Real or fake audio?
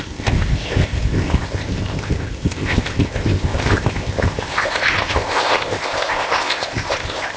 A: fake